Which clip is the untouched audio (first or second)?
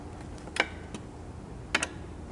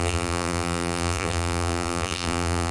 first